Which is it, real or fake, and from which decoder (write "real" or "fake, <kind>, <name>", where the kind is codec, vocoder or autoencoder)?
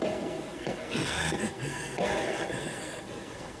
fake, codec, SNAC